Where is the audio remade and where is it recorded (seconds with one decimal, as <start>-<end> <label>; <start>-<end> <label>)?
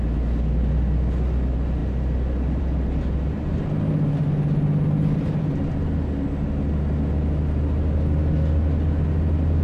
0.0-9.6 recorded